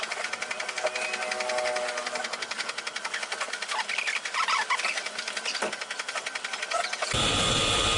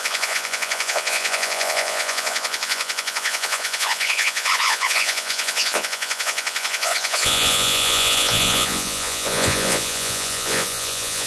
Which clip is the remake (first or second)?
second